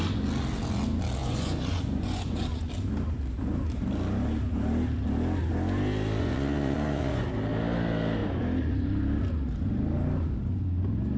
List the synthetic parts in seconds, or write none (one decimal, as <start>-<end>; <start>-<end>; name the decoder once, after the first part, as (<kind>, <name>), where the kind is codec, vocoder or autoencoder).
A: 1.2-2.7 (vocoder, Vocos); 6.2-7.3